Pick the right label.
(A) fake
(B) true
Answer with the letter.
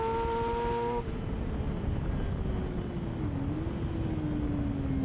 B